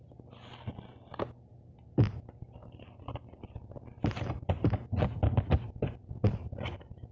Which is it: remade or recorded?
recorded